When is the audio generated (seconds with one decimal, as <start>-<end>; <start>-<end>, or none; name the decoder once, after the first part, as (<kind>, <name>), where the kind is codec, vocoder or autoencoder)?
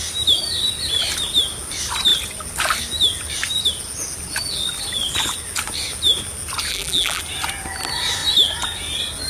6.7-7.2 (vocoder, BigVGAN v2)